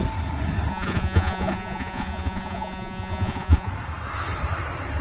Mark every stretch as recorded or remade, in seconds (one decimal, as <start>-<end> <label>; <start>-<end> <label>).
0.0-0.7 recorded; 0.7-3.7 remade; 3.7-5.0 recorded